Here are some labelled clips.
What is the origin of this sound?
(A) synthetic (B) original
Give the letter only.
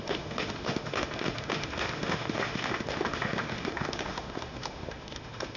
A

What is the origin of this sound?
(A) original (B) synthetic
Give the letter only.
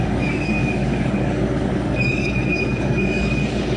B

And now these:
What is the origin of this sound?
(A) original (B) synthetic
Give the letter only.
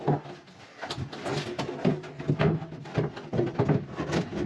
A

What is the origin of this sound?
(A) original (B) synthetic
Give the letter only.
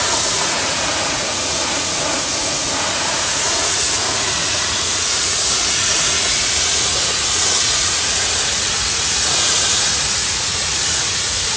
B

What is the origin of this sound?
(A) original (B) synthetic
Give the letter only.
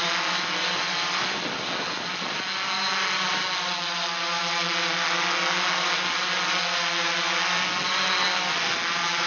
A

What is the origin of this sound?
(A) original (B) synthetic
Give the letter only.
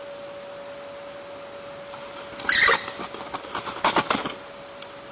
A